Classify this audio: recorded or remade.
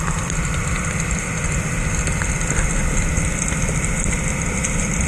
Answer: remade